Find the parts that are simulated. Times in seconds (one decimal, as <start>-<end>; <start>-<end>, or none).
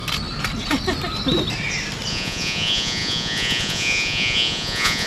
2.1-5.1